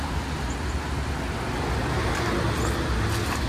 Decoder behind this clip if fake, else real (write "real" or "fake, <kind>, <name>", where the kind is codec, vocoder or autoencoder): real